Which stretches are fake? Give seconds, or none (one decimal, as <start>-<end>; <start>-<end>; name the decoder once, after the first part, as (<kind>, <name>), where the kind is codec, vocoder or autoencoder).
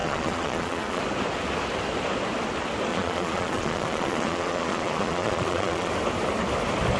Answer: 0.0-1.0 (vocoder, Vocos); 2.9-5.9